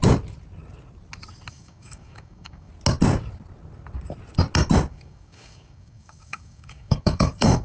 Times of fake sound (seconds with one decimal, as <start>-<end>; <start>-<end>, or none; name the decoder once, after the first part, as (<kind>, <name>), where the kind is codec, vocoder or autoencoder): 1.5-2.7 (codec, DAC); 4.9-7.6

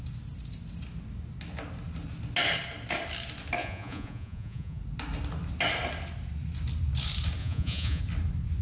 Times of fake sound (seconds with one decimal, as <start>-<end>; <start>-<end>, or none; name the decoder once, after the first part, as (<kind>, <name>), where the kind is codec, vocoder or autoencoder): 3.6-4.8 (vocoder, Vocos); 7.4-8.0

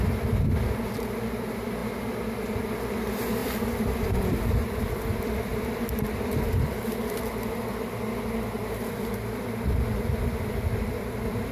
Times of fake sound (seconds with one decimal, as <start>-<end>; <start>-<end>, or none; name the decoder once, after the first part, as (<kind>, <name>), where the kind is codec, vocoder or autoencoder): 0.0-1.8 (vocoder, BigVGAN v2); 2.6-5.5; 8.9-11.5

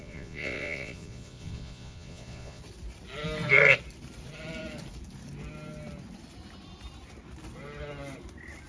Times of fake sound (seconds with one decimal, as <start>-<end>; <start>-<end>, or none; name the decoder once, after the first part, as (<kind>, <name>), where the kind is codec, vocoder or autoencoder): 0.0-2.6 (vocoder, Vocos)